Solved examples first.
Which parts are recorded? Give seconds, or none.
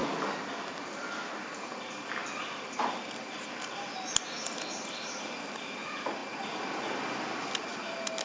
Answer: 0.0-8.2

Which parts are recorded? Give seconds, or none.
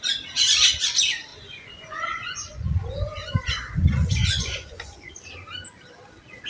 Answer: 0.0-1.3; 5.1-6.5